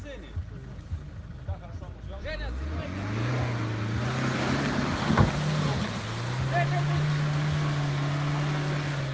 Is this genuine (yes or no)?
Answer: yes